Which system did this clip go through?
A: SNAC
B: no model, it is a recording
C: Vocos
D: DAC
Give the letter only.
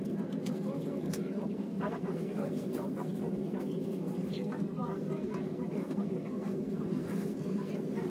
A